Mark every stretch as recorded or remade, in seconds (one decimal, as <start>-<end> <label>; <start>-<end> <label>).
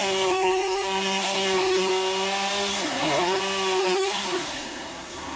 0.0-1.9 remade; 1.9-2.7 recorded; 2.7-3.4 remade; 3.4-3.8 recorded; 3.8-5.4 remade